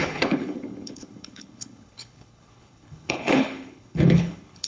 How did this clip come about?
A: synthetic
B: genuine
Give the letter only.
A